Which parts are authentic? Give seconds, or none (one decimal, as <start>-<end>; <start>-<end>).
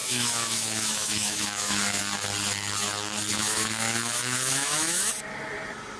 2.0-3.3; 5.1-6.0